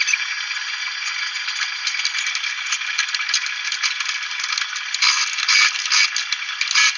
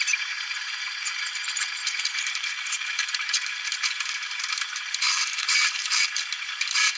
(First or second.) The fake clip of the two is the second